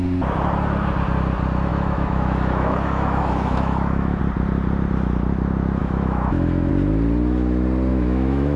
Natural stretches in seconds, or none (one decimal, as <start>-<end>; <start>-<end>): 0.0-1.7; 4.2-5.8; 6.7-7.9